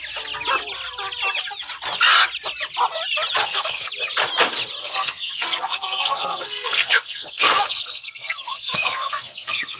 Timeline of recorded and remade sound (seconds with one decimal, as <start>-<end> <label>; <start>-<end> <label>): 0.0-3.4 recorded; 3.4-3.9 remade; 3.9-4.8 recorded; 4.8-9.8 remade